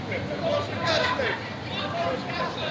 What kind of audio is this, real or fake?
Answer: real